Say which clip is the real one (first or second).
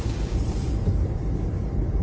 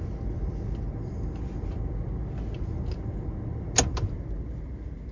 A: second